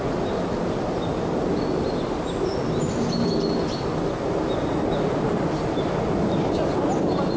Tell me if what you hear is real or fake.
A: real